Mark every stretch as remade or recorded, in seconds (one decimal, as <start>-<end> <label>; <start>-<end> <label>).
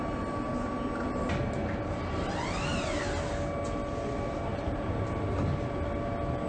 0.0-1.4 recorded; 1.4-2.3 remade; 2.3-4.5 recorded; 4.5-5.4 remade; 5.4-6.5 recorded